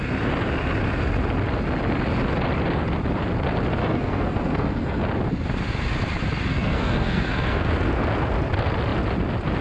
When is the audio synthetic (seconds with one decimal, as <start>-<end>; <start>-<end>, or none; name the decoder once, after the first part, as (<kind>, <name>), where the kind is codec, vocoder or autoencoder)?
3.8-5.0 (codec, SNAC); 6.5-7.7